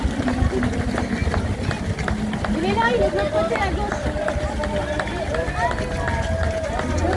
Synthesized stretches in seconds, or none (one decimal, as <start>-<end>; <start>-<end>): none